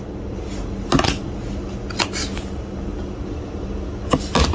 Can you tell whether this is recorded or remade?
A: recorded